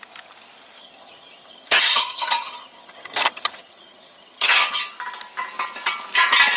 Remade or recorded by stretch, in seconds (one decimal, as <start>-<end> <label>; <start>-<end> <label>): 0.0-0.8 recorded; 0.8-4.8 remade; 4.8-6.6 recorded